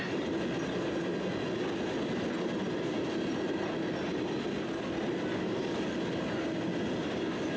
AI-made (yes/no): no